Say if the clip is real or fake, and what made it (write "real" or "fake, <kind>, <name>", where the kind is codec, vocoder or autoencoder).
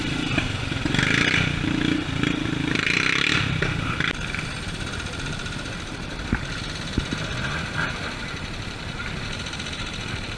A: fake, vocoder, BigVGAN v2